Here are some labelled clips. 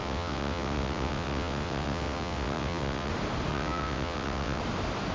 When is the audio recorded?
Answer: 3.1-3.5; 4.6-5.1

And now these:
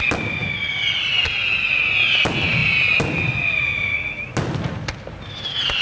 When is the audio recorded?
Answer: 0.0-5.8

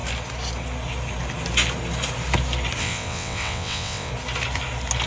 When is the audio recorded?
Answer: 0.0-2.8; 4.1-5.1

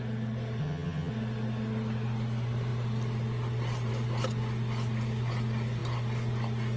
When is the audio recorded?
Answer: 0.0-0.6; 1.1-6.8

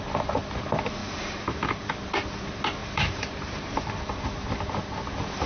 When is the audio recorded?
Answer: 0.0-1.0; 1.9-2.8; 4.2-5.5

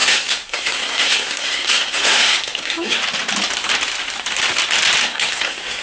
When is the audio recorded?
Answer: 3.0-5.0